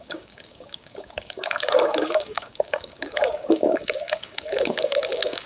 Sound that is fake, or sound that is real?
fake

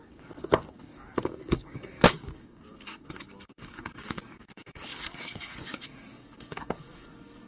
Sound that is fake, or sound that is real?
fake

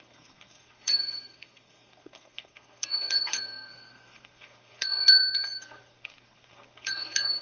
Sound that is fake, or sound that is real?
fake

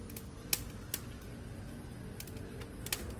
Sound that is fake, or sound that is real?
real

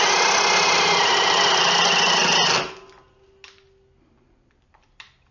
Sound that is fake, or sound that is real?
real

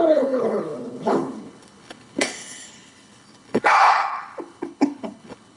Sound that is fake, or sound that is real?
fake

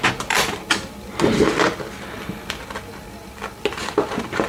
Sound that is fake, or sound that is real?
real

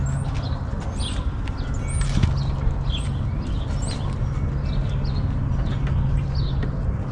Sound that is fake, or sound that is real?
real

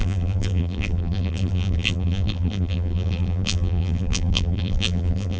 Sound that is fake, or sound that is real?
fake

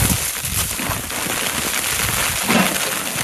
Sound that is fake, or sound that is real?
real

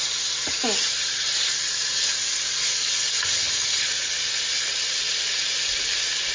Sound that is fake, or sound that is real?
real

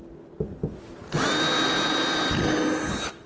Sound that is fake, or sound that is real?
real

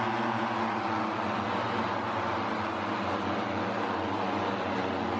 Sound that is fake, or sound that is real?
real